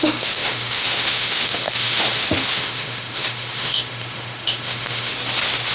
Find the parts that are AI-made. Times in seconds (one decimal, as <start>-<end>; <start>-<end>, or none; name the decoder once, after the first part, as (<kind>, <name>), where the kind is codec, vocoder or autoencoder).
0.0-5.1 (autoencoder, DAC-VAE)